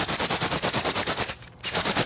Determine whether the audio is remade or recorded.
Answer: recorded